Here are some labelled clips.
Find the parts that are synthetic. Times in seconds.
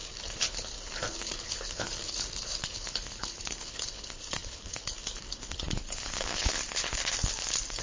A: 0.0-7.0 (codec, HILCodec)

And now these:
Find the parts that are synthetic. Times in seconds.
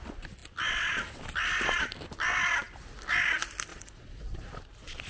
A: 3.7-4.4 (vocoder, Vocos)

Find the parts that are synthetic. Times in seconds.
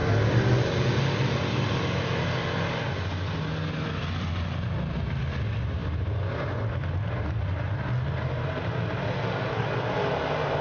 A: none